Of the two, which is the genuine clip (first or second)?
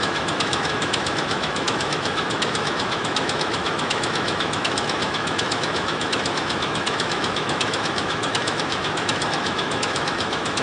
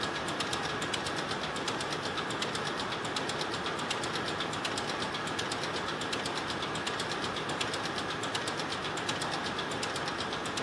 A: second